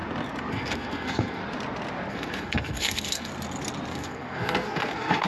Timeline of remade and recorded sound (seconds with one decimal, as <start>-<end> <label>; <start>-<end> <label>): 0.0-0.5 recorded; 0.5-1.4 remade; 1.4-2.1 recorded; 2.1-3.3 remade; 3.3-3.9 recorded; 3.9-5.3 remade